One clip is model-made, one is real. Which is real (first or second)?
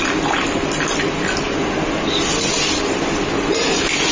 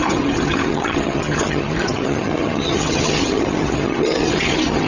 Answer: first